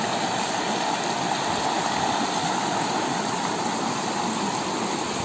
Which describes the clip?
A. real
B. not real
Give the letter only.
A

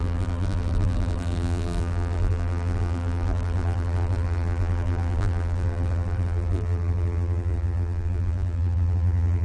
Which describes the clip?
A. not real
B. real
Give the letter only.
A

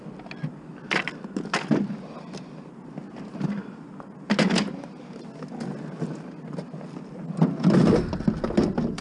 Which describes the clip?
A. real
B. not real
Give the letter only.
A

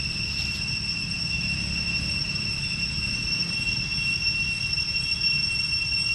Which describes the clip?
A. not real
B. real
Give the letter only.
B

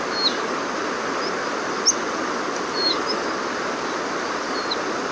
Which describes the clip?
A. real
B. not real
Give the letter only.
A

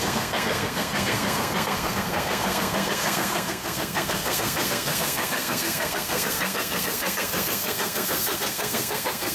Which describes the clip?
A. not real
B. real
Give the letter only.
A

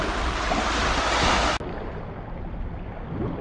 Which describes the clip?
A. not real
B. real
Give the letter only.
B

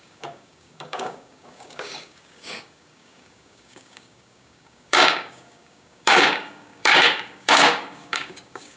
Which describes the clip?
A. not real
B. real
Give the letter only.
A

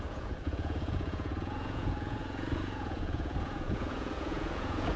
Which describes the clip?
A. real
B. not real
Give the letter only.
B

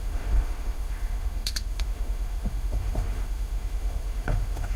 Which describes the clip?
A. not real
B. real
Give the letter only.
A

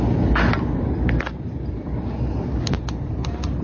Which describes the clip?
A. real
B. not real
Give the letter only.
A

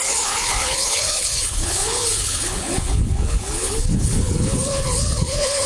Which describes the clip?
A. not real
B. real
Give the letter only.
A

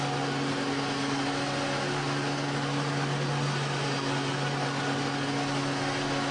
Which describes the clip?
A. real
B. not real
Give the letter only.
A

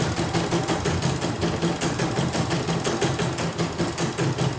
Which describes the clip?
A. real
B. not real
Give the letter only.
A